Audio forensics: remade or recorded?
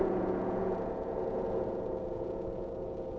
remade